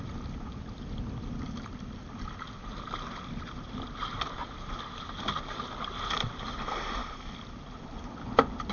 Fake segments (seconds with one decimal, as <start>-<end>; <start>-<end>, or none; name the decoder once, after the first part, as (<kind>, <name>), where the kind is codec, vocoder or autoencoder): none